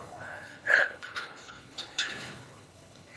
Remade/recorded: remade